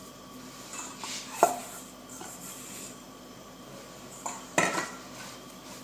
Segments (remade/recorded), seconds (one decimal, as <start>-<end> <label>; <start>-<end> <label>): 0.0-5.8 recorded